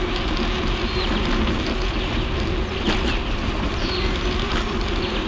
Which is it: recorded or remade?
recorded